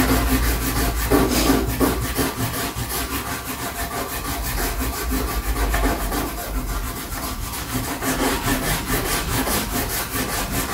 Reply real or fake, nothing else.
real